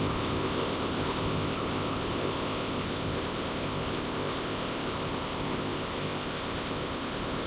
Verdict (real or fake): fake